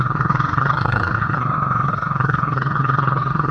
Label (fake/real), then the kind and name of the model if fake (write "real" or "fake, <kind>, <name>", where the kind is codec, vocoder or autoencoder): fake, codec, SNAC